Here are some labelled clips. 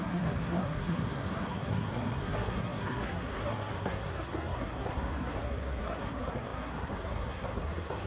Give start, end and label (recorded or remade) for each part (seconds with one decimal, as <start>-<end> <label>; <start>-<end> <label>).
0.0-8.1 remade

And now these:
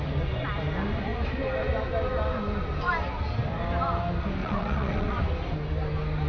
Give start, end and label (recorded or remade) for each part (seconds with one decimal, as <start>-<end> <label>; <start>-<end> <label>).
0.0-4.4 recorded; 4.4-5.2 remade; 5.2-6.3 recorded

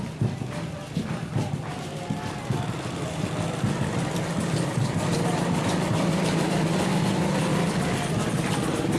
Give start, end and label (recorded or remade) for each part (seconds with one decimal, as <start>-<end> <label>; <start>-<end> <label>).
0.0-7.5 recorded; 7.5-8.1 remade; 8.1-9.0 recorded

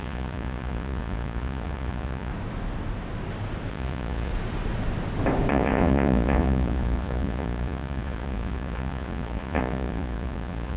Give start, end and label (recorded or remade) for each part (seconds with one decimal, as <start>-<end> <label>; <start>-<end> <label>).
0.0-2.3 remade; 2.3-3.7 recorded; 3.7-4.3 remade; 4.3-5.5 recorded; 5.5-10.8 remade